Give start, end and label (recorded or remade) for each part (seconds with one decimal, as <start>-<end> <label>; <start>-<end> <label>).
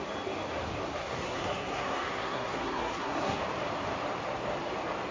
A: 0.0-1.0 recorded; 1.0-3.4 remade; 3.4-5.1 recorded